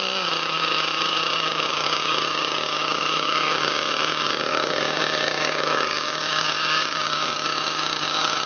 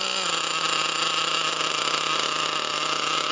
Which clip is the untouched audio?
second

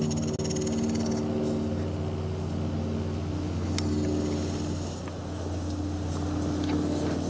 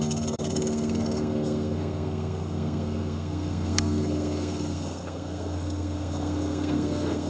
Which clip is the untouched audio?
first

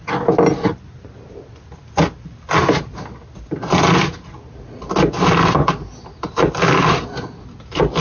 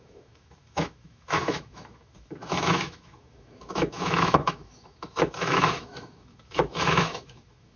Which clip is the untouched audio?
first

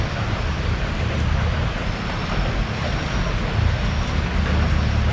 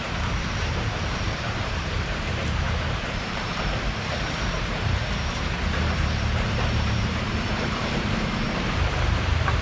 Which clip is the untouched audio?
first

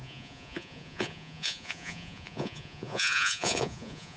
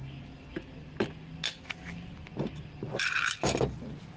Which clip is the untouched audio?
second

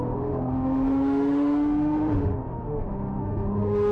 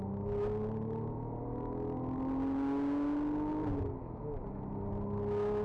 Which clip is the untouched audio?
second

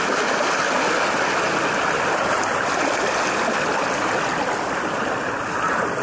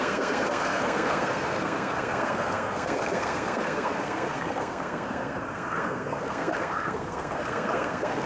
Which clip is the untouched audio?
first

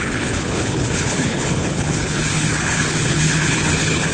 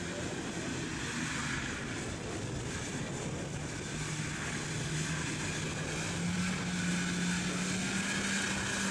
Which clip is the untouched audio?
second